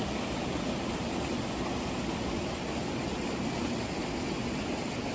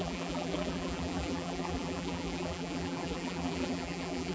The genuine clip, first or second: first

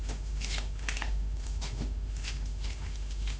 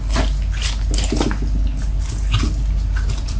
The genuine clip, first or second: second